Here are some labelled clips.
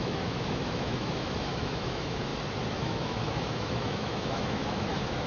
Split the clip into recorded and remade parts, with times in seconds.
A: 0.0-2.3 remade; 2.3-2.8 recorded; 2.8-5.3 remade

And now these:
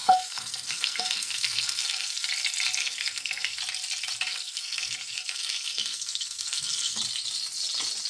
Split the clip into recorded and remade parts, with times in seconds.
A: 0.0-2.3 remade; 2.3-2.8 recorded; 2.8-3.6 remade; 3.6-4.3 recorded; 4.3-7.0 remade; 7.0-8.1 recorded

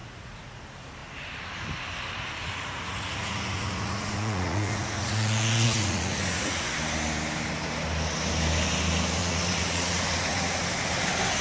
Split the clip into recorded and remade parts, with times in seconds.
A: 0.0-0.6 remade; 0.6-2.4 recorded; 2.4-6.7 remade; 6.7-9.2 recorded; 9.2-10.6 remade; 10.6-11.4 recorded

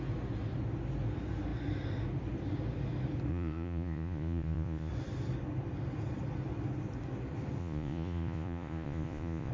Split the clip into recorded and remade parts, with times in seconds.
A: 0.0-3.3 recorded; 3.3-4.9 remade; 4.9-7.6 recorded; 7.6-9.5 remade